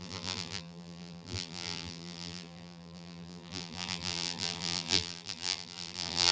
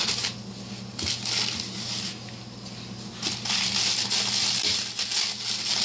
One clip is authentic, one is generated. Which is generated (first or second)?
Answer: first